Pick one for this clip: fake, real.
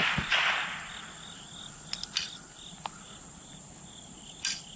real